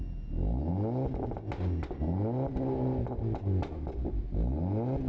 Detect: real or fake real